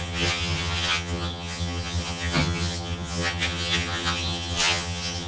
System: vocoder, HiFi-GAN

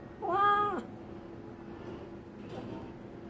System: none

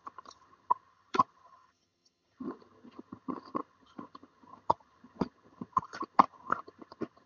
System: vocoder, HiFi-GAN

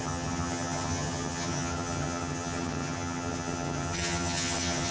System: vocoder, HiFi-GAN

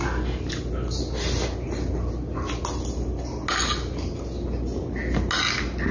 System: none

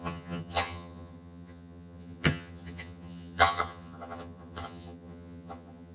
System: vocoder, HiFi-GAN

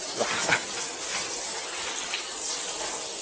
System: none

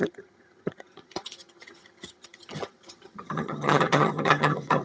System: vocoder, HiFi-GAN